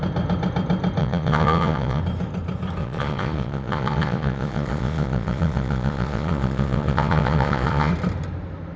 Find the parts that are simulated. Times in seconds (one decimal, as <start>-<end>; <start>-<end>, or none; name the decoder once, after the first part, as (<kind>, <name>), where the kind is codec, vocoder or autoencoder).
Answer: 1.0-2.0 (vocoder, Vocos); 2.8-7.9